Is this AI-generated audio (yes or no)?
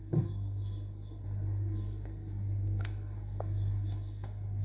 yes